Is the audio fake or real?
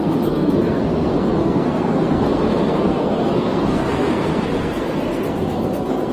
fake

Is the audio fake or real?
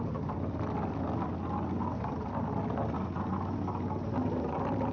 real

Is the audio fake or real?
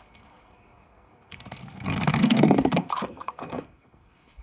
fake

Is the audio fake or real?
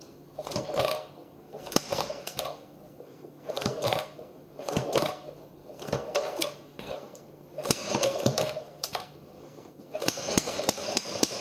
fake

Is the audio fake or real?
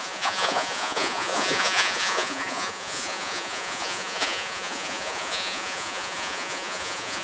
fake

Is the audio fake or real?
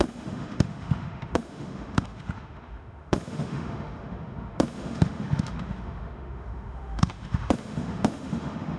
fake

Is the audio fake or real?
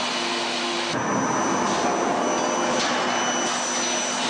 real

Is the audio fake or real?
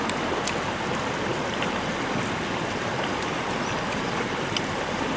real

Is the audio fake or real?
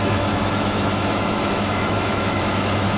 fake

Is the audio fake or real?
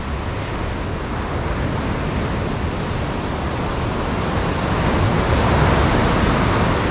real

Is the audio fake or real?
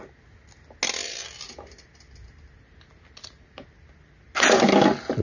real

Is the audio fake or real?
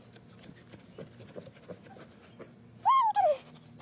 real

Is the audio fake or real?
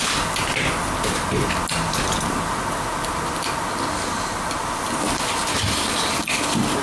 real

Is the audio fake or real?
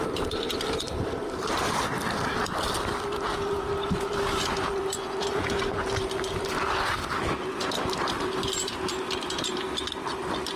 fake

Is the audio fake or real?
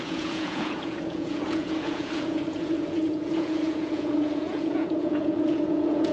fake